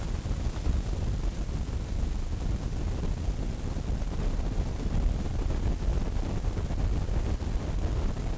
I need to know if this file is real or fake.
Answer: real